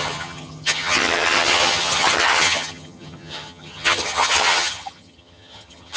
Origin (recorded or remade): remade